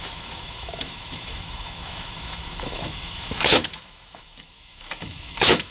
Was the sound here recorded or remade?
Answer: remade